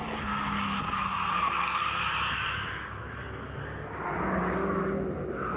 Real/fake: real